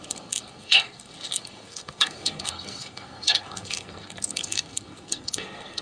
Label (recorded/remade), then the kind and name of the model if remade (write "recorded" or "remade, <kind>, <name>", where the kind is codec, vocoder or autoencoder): remade, codec, SNAC